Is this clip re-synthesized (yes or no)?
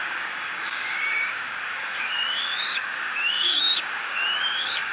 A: yes